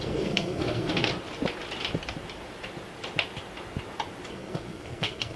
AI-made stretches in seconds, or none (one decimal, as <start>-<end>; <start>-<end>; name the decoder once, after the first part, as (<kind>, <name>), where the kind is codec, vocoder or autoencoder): 0.0-1.1 (codec, SNAC); 4.3-5.4